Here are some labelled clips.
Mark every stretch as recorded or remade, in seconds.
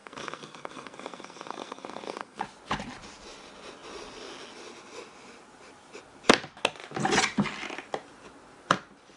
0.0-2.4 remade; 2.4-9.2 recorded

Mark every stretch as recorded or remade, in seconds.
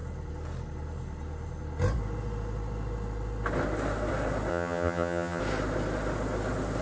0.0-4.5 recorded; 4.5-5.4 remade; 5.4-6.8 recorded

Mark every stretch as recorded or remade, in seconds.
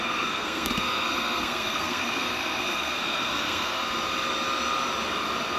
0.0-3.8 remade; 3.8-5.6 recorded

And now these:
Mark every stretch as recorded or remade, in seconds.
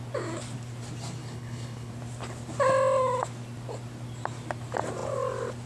0.0-1.2 recorded; 1.2-1.9 remade; 1.9-5.7 recorded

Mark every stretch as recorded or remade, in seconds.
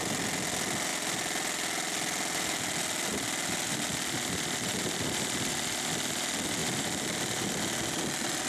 0.0-0.9 recorded; 0.9-5.5 remade; 5.5-6.6 recorded; 6.6-7.2 remade; 7.2-8.5 recorded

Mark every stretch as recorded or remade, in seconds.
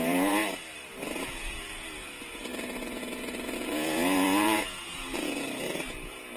0.0-0.4 remade; 0.4-1.2 recorded; 1.2-6.4 remade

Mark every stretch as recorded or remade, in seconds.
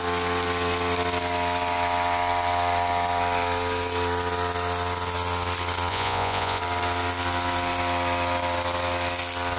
0.0-5.9 recorded; 5.9-6.6 remade; 6.6-9.6 recorded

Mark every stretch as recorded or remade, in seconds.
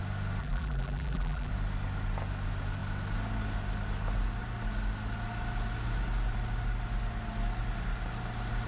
0.0-0.4 recorded; 0.4-1.5 remade; 1.5-8.7 recorded